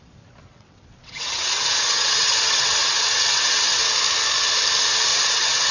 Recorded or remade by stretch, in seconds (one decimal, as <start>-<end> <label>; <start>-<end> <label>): 0.0-0.5 recorded; 0.5-3.9 remade; 3.9-5.1 recorded; 5.1-5.7 remade